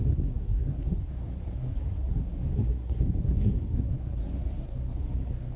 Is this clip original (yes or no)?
no